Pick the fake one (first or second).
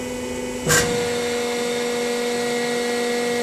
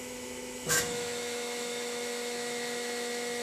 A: second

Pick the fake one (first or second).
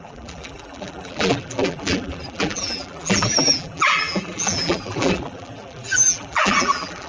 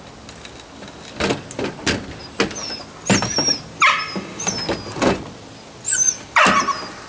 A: first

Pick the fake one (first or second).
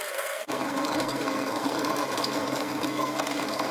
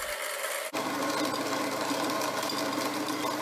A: first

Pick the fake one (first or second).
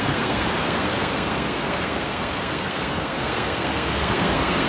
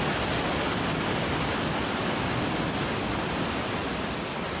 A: first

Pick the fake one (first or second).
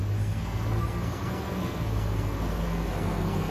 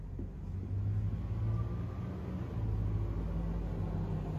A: first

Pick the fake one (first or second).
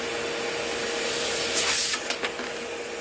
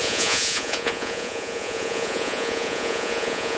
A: second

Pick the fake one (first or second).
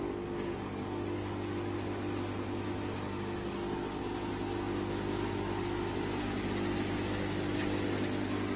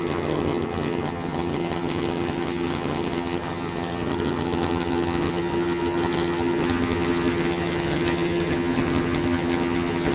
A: second